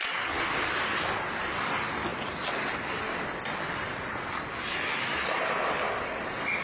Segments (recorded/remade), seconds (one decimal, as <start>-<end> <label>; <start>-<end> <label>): 0.0-6.6 recorded